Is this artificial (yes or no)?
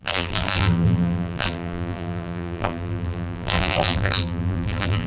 yes